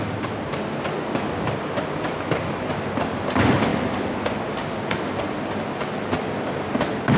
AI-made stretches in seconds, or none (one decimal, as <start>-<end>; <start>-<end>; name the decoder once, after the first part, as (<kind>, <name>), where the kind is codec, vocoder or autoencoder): none